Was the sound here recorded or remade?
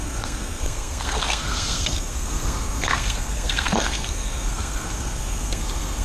remade